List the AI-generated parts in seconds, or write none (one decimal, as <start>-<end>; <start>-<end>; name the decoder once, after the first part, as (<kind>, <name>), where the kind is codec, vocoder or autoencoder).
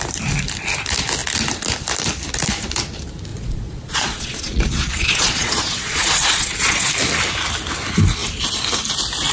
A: 3.3-6.9 (vocoder, Vocos)